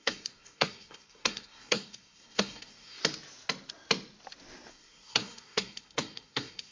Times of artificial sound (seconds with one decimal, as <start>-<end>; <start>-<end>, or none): 0.0-3.0; 4.7-6.7